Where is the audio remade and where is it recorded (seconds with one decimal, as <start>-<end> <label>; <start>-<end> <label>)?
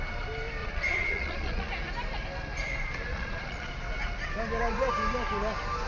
0.0-0.6 recorded; 0.6-1.7 remade; 1.7-3.1 recorded; 3.1-3.7 remade; 3.7-5.9 recorded